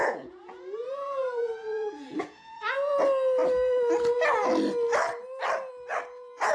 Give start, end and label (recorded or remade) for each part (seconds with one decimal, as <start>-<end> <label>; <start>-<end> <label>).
0.0-3.0 remade; 3.0-6.5 recorded